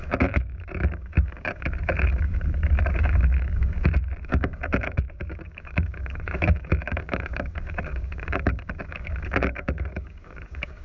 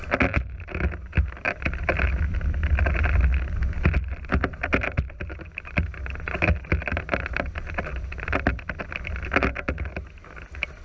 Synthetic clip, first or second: first